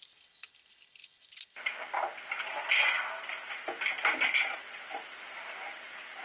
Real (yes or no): yes